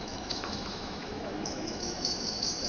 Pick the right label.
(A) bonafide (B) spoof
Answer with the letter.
B